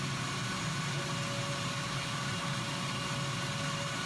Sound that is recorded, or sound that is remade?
recorded